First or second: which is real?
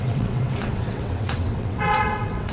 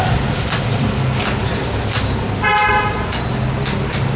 second